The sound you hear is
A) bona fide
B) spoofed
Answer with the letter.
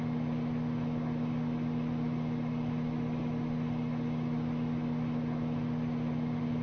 A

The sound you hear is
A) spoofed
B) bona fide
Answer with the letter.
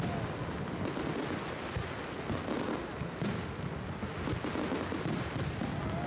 B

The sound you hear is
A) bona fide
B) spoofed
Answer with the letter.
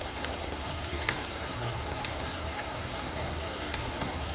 B